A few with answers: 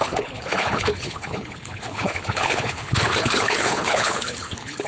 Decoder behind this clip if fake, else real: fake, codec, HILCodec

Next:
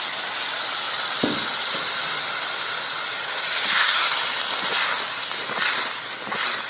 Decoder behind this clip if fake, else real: real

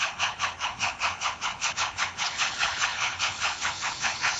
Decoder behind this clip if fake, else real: fake, codec, HILCodec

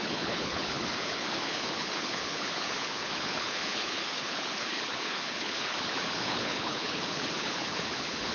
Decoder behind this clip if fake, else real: fake, codec, HILCodec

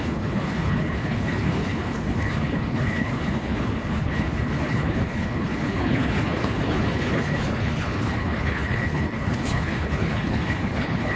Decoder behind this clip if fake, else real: fake, codec, HILCodec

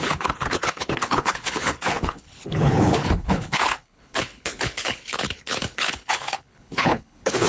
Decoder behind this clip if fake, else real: fake, codec, HILCodec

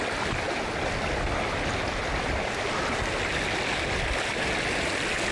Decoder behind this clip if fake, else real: real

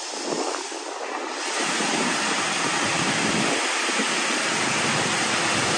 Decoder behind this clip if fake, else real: real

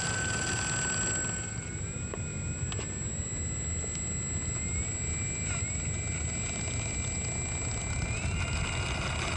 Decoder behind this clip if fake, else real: real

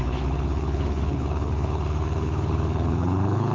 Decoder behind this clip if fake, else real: fake, codec, HILCodec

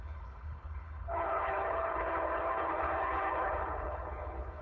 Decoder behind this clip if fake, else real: fake, codec, HILCodec